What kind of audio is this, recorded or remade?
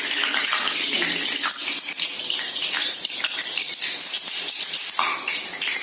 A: remade